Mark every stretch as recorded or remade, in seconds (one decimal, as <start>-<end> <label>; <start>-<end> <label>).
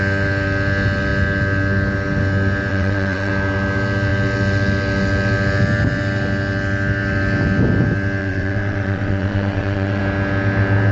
0.0-2.7 recorded; 2.7-3.3 remade; 3.3-8.2 recorded; 8.2-10.0 remade; 10.0-10.9 recorded